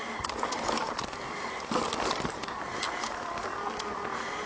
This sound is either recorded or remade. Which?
recorded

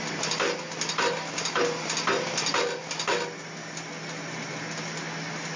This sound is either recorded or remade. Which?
recorded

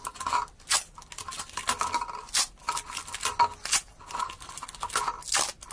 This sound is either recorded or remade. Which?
recorded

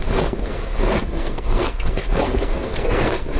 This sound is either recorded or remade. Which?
remade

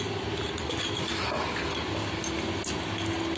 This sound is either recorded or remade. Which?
recorded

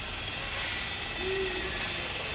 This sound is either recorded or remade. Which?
recorded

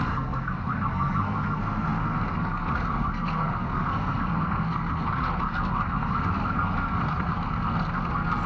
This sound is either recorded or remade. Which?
remade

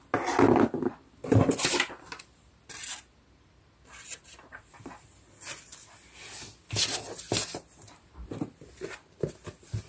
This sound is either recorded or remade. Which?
recorded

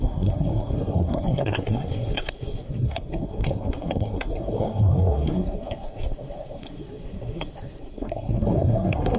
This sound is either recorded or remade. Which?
remade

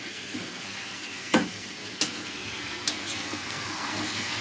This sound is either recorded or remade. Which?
remade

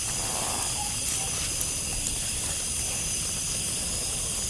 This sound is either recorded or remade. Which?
recorded